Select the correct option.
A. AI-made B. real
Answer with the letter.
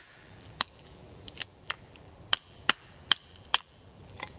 A